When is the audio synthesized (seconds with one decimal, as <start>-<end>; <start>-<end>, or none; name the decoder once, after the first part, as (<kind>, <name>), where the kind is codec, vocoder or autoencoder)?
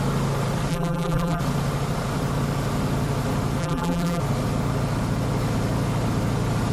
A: 0.7-1.4 (vocoder, BigVGAN v2); 3.6-4.2